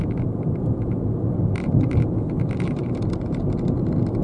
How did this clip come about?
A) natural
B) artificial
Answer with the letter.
A